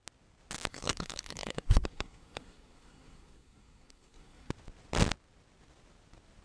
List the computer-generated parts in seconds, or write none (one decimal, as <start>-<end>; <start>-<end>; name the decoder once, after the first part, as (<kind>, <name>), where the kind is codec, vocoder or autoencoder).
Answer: 0.7-4.5 (codec, SNAC)